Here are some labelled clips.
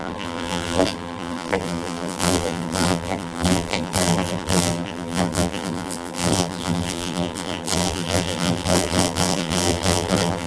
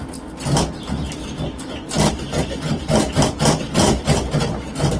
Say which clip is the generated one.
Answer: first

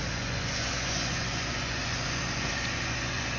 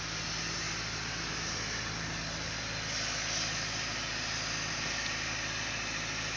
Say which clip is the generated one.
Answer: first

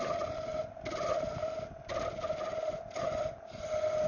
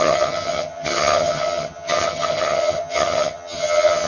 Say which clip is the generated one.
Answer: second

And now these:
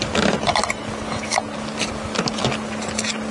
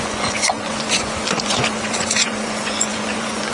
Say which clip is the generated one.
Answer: second